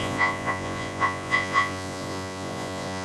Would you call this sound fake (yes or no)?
yes